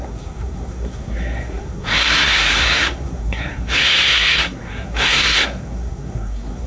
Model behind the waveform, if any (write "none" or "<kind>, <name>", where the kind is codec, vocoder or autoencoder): codec, SNAC